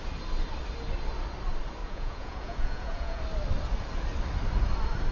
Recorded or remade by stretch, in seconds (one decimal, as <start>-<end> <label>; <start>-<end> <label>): 0.0-1.8 recorded; 1.8-3.2 remade; 3.2-5.1 recorded